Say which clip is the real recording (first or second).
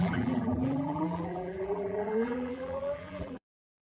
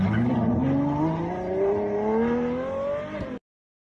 second